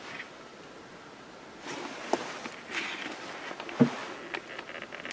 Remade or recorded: recorded